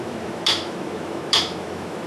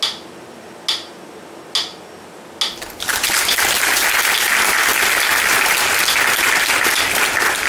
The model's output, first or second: first